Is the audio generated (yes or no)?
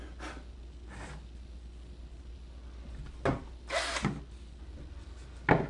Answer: no